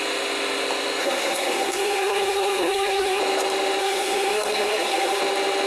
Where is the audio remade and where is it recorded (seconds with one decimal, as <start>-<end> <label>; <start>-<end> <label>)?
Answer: 0.0-1.0 recorded; 1.0-3.2 remade; 3.2-3.8 recorded; 3.8-5.2 remade; 5.2-5.7 recorded